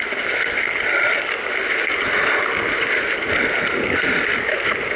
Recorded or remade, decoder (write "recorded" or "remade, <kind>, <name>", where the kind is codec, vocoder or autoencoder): recorded